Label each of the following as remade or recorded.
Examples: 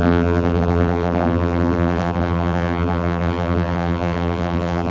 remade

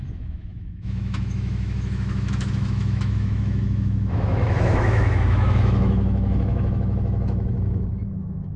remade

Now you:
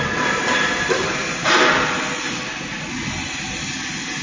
recorded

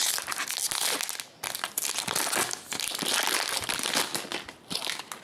recorded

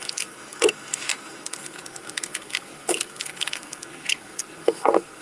remade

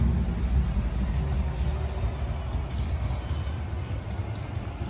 recorded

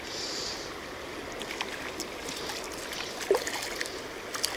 recorded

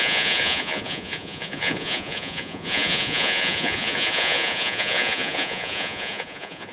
remade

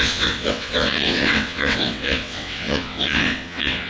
remade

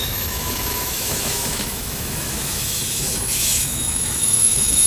remade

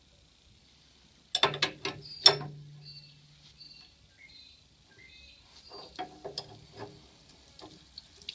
recorded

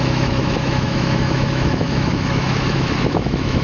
remade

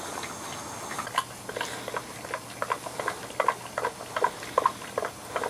recorded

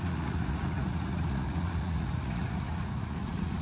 remade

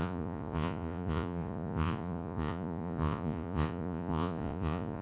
remade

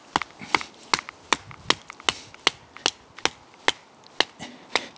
recorded